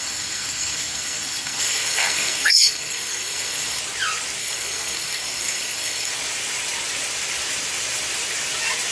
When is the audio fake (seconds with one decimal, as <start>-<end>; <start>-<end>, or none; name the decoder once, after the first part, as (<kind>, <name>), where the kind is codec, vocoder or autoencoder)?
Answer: 0.0-3.8 (codec, SNAC); 4.4-6.1